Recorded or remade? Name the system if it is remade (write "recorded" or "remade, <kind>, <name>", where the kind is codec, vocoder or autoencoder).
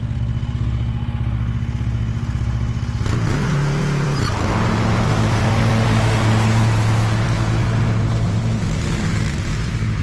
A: recorded